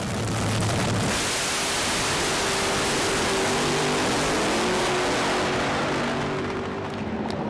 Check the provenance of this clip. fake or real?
real